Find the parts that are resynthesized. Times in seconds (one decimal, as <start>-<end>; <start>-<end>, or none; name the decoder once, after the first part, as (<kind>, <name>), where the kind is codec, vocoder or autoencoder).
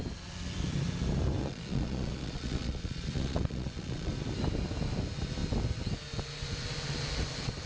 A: 1.4-4.1 (vocoder, Vocos)